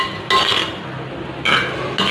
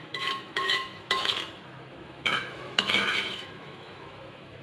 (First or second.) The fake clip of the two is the second